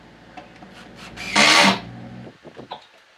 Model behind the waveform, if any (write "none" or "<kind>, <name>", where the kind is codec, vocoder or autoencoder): none